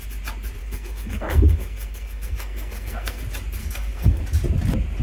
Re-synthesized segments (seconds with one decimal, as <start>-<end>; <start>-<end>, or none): 0.6-3.2; 3.6-4.2